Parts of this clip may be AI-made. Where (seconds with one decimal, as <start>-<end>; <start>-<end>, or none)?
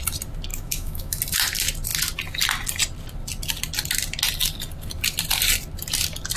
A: 0.5-1.2